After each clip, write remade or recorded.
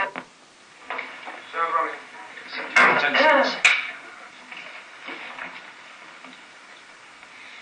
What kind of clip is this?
recorded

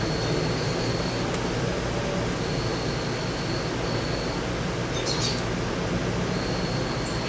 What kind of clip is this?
recorded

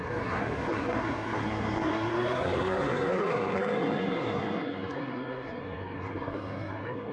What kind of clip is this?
remade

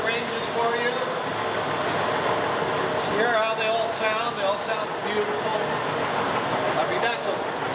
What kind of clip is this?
recorded